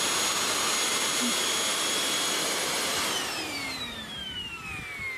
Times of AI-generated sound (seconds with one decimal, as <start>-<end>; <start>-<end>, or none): 1.7-4.8